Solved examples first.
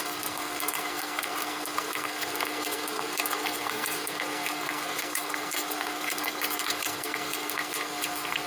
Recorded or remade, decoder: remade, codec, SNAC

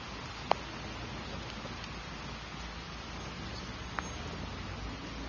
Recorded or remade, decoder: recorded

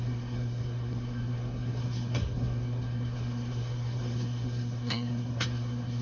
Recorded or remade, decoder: remade, codec, SNAC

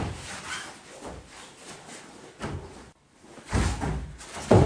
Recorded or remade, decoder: recorded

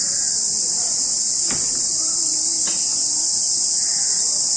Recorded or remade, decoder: recorded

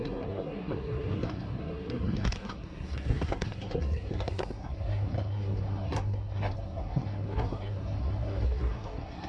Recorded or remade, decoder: remade, codec, SNAC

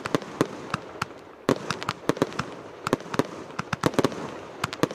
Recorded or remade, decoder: recorded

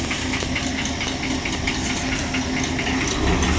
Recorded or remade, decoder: recorded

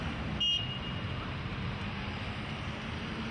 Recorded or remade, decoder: recorded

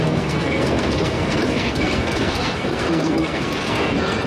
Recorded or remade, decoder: remade, codec, SNAC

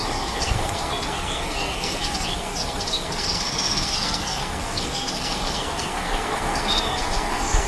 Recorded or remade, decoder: remade, codec, SNAC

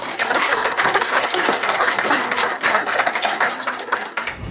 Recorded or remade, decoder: remade, codec, SNAC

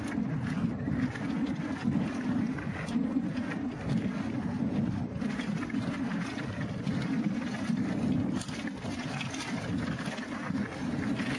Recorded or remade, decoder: recorded